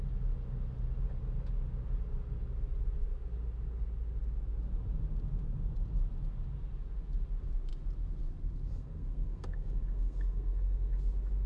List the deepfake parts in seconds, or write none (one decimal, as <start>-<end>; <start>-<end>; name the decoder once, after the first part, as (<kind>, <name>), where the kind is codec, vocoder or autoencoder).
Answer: 8.7-11.0 (codec, SNAC)